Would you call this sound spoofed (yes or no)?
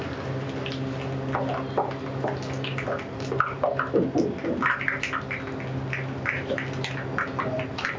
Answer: no